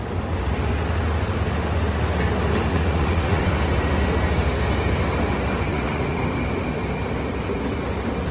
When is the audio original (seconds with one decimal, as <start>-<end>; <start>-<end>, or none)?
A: 0.0-2.7; 3.5-5.7; 6.2-8.3